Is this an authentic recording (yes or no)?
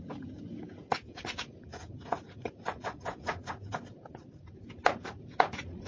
no